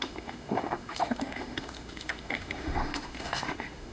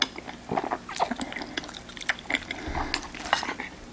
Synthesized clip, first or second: first